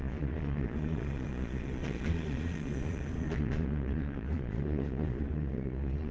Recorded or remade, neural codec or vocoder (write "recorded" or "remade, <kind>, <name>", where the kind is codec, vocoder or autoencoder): remade, vocoder, Vocos